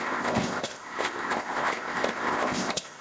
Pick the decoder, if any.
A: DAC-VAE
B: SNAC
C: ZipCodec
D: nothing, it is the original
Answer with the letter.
C